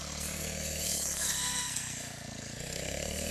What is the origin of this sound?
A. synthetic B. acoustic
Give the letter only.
A